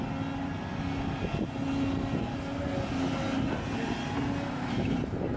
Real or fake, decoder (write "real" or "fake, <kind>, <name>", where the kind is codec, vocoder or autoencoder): real